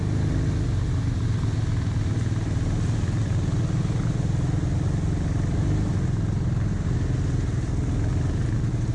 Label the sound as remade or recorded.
recorded